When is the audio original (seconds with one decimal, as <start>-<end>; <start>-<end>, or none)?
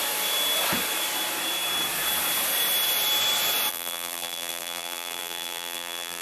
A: 0.0-3.7